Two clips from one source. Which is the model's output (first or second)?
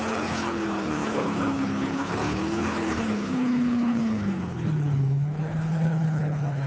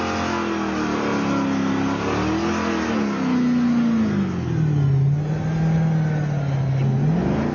first